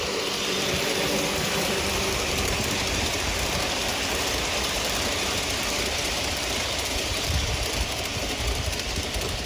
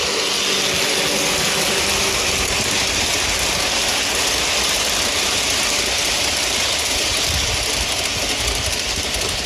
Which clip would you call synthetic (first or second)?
first